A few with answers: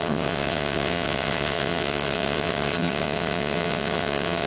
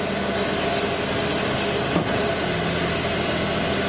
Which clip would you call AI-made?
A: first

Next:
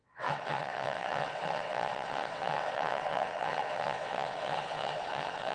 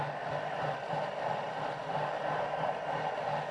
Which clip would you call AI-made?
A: first